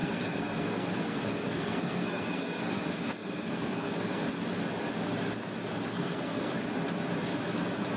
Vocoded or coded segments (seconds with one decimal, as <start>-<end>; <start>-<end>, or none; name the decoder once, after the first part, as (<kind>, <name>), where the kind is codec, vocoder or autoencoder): 0.0-4.2 (codec, SNAC); 5.9-6.6